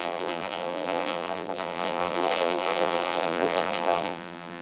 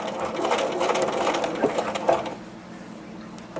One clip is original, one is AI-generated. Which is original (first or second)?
second